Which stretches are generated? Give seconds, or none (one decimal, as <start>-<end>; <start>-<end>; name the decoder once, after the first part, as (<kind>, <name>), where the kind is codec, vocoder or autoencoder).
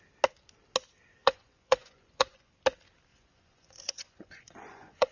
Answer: 1.2-2.5 (vocoder, Vocos); 3.1-5.1